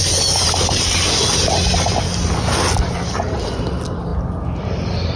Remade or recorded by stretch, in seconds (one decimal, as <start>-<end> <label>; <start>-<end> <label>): 0.0-5.2 recorded